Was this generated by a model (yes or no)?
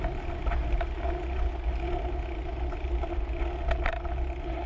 no